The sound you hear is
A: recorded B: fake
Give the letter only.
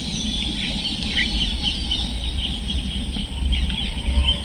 A